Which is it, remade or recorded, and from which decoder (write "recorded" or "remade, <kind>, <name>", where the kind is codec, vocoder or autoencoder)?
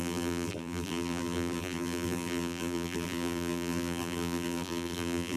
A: remade, vocoder, BigVGAN v2